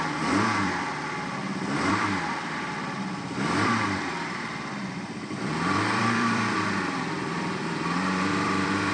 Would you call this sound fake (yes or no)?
yes